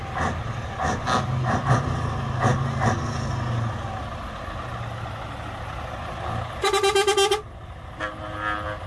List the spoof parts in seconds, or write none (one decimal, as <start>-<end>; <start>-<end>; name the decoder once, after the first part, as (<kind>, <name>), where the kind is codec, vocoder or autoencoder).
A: none